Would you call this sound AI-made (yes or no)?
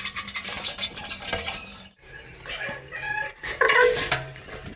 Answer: yes